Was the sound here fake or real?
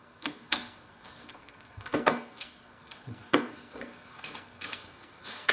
fake